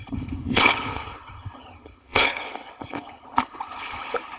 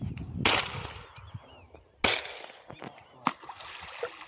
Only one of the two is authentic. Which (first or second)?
second